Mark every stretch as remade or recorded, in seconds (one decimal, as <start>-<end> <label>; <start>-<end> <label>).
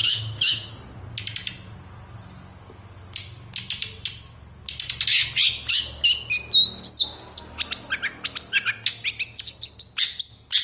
0.0-0.7 remade; 0.7-10.6 recorded